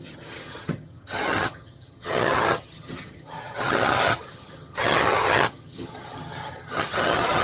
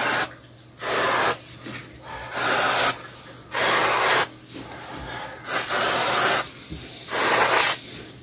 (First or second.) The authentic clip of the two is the second